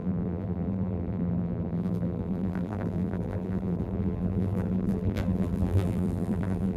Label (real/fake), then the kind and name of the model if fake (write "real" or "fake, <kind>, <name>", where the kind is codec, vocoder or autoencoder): fake, vocoder, BigVGAN v2